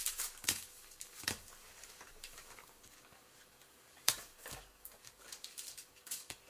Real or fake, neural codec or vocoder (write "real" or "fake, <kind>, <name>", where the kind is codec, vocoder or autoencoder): fake, codec, DAC